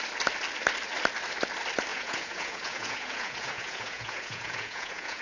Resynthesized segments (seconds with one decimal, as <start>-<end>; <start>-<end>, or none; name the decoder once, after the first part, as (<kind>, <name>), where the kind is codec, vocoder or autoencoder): 1.9-5.2 (vocoder, Vocos)